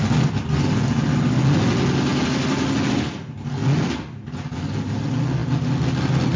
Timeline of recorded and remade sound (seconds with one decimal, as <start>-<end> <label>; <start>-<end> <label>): 0.0-6.4 recorded